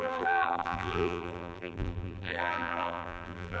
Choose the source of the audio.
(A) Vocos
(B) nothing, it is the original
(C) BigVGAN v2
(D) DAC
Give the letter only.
C